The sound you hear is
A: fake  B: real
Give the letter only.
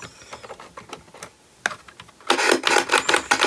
B